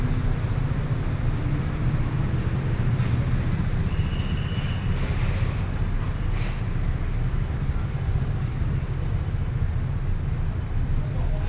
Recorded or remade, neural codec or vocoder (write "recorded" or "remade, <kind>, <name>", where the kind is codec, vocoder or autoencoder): recorded